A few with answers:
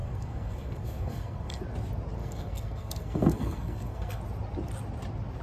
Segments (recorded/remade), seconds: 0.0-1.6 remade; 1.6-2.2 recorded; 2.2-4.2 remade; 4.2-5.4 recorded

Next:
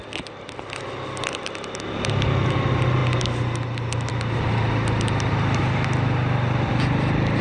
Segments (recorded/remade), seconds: 0.0-7.4 recorded

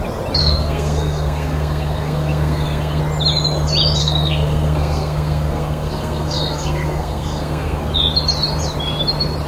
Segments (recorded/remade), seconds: 0.0-0.4 recorded; 0.4-3.0 remade; 3.0-4.0 recorded; 4.0-7.9 remade; 7.9-9.5 recorded

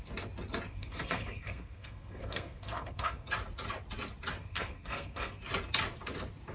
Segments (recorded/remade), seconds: 0.0-0.7 recorded; 0.7-3.3 remade; 3.3-4.4 recorded; 4.4-5.4 remade; 5.4-6.5 recorded

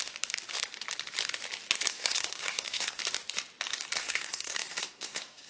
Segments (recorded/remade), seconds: 0.0-1.9 recorded; 1.9-3.0 remade; 3.0-4.0 recorded; 4.0-5.5 remade

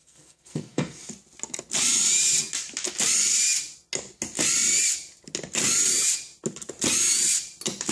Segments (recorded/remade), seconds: 0.0-1.1 remade; 1.1-7.9 recorded

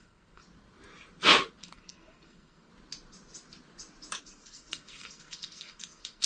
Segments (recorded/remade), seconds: 0.0-0.4 remade; 0.4-1.6 recorded; 1.6-2.7 remade; 2.7-4.2 recorded; 4.2-6.3 remade

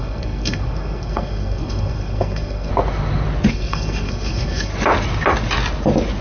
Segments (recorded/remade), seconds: 0.0-2.7 remade; 2.7-3.5 recorded; 3.5-4.7 remade; 4.7-6.2 recorded